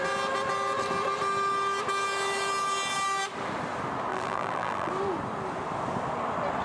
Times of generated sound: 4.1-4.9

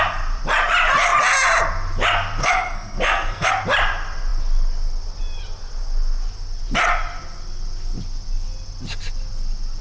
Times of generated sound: 2.4-3.5